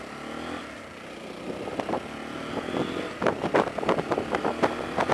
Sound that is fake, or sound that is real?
real